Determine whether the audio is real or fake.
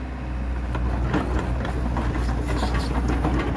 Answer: real